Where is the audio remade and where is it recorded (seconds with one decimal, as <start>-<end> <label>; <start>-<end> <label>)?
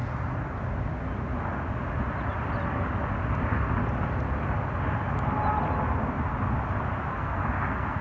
0.0-7.1 recorded; 7.1-8.0 remade